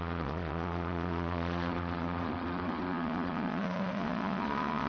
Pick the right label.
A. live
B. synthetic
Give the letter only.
B